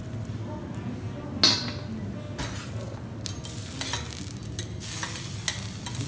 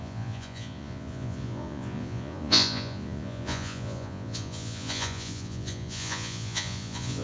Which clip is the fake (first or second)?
second